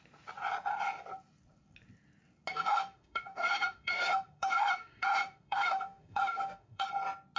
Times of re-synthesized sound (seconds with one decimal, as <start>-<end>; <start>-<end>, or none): 2.5-6.9